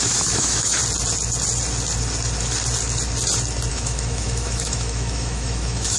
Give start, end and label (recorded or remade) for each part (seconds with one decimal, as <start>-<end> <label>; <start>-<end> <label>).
0.0-0.8 remade; 0.8-3.7 recorded; 3.7-6.0 remade